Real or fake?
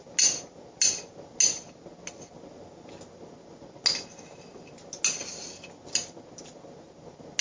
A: real